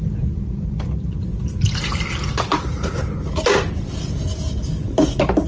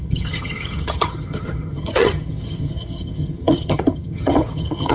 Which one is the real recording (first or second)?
first